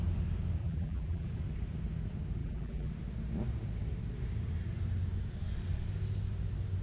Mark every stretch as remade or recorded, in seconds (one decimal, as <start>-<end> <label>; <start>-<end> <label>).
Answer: 0.0-0.6 recorded; 0.6-1.3 remade; 1.3-2.4 recorded; 2.4-2.9 remade; 2.9-6.8 recorded